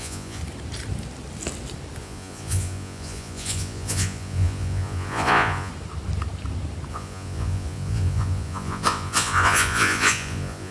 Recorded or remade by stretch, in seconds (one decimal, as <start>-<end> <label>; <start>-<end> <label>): 0.0-0.4 remade; 0.4-2.0 recorded; 2.0-5.7 remade; 5.7-6.9 recorded; 6.9-10.7 remade